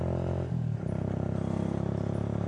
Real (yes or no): yes